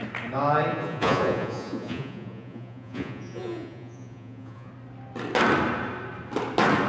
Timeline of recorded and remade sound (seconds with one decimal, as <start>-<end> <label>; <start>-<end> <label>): 0.0-0.7 recorded; 0.7-4.7 remade; 4.7-6.9 recorded